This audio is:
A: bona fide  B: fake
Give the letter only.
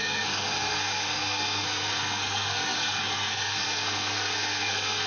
B